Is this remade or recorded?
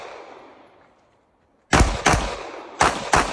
recorded